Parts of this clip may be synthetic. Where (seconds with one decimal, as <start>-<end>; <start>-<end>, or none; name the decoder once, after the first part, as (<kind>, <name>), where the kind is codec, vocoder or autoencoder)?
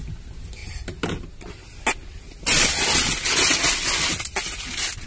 none